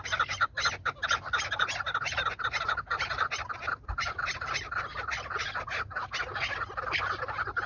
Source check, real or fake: real